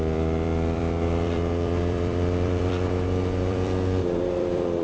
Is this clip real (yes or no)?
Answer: no